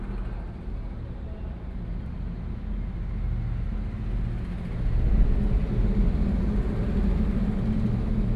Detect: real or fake real